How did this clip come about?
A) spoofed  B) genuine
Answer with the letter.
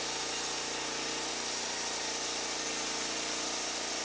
B